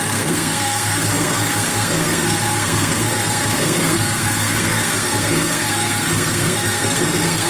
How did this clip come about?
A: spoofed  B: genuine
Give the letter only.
A